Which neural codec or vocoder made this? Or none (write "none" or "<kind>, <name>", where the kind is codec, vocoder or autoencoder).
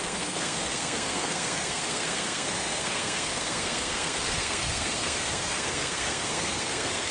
codec, SNAC